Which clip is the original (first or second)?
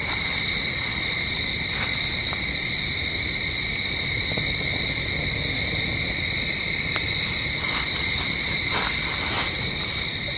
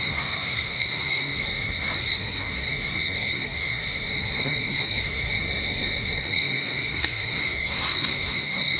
first